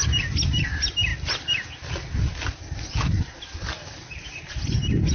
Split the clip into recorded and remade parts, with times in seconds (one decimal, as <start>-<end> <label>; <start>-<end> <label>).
0.0-5.1 recorded